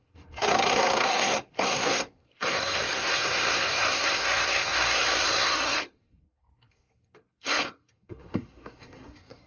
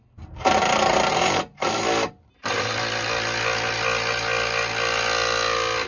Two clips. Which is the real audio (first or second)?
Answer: second